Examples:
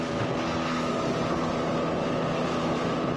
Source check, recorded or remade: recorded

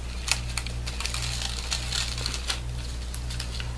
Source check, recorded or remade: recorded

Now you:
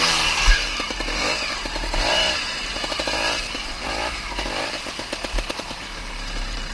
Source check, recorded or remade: remade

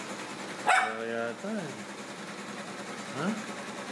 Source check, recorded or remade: recorded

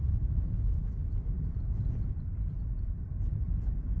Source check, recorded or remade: remade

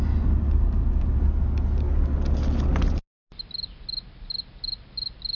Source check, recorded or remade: recorded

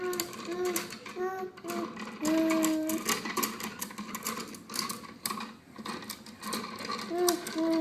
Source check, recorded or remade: recorded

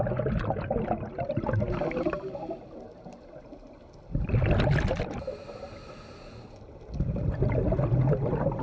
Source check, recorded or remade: recorded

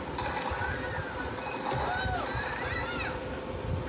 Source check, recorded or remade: recorded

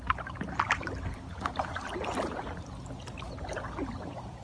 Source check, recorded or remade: recorded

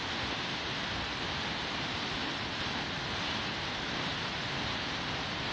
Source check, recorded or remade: remade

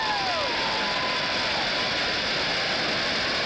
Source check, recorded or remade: recorded